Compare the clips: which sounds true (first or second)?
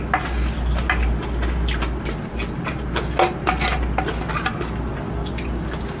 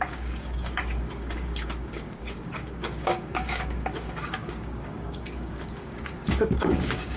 first